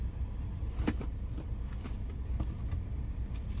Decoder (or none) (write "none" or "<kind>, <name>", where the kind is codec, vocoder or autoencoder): none